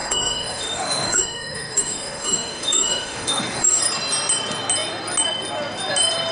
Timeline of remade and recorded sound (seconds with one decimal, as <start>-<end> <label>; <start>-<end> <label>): 0.0-3.8 remade; 3.8-6.3 recorded